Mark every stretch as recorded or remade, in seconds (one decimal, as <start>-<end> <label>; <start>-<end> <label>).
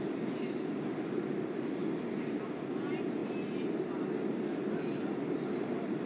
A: 0.0-6.1 recorded